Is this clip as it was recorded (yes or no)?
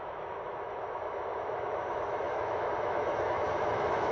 no